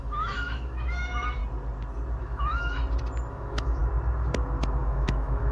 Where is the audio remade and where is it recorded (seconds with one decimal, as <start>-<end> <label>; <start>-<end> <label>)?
0.0-1.4 remade; 1.4-2.2 recorded; 2.2-2.8 remade; 2.8-3.3 recorded; 3.3-3.8 remade; 3.8-4.8 recorded; 4.8-5.5 remade